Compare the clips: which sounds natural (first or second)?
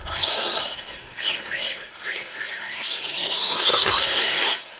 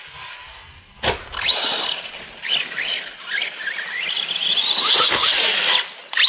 second